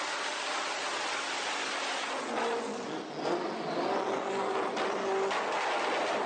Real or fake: real